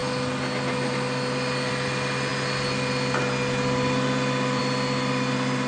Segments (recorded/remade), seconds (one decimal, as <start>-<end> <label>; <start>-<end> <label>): 0.0-5.7 recorded